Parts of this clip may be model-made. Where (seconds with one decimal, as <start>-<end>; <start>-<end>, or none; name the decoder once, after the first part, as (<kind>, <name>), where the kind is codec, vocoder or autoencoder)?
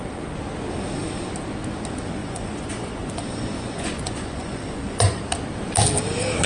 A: 2.2-5.2 (vocoder, Vocos)